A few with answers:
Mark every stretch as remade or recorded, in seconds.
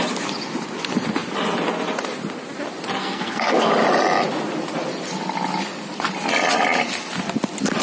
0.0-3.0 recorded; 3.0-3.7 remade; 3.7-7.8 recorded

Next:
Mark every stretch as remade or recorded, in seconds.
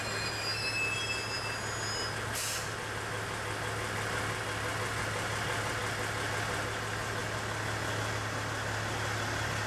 0.0-9.7 recorded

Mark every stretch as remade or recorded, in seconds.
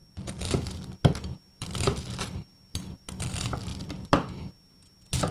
0.0-3.2 remade; 3.2-3.7 recorded; 3.7-4.4 remade; 4.4-5.3 recorded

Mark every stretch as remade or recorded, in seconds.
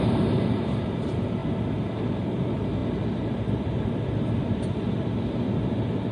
0.0-1.4 remade; 1.4-2.1 recorded; 2.1-2.8 remade; 2.8-5.4 recorded; 5.4-6.1 remade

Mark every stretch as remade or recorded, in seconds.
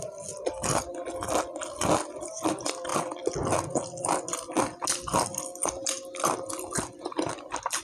0.0-7.8 recorded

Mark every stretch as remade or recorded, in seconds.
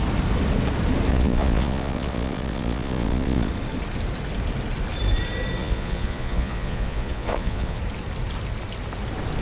0.0-1.1 recorded; 1.1-3.5 remade; 3.5-5.6 recorded; 5.6-7.8 remade; 7.8-9.4 recorded